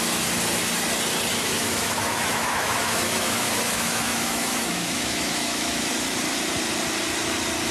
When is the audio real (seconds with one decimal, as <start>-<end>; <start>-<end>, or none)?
0.0-1.3; 5.9-7.7